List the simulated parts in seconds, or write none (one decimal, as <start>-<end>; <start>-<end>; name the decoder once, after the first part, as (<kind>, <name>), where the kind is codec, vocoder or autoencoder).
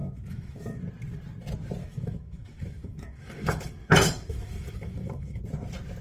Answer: 0.0-0.8 (autoencoder, DAC-VAE); 1.8-5.4